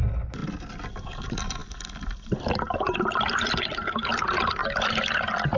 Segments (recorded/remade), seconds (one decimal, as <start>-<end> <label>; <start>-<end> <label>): 0.0-5.6 recorded